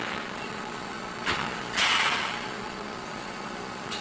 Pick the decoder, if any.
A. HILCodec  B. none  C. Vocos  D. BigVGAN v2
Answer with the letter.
C